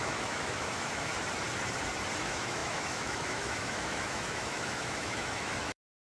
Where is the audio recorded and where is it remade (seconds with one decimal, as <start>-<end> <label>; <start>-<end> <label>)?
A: 0.0-1.1 remade; 1.1-2.2 recorded; 2.2-6.1 remade